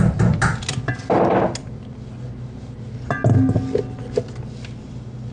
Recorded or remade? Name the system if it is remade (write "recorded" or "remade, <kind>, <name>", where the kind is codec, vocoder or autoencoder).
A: recorded